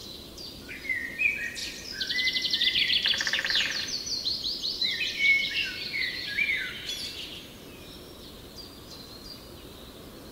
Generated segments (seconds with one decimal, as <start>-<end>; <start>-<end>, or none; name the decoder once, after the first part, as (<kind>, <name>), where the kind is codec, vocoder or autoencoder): 1.6-6.9 (vocoder, BigVGAN v2)